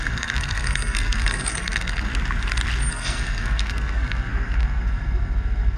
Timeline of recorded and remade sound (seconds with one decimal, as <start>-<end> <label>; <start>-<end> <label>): 0.0-2.1 remade; 2.1-2.9 recorded; 2.9-5.8 remade